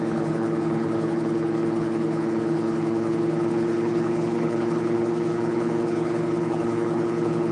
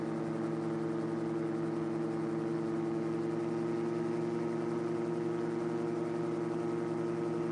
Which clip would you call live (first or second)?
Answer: second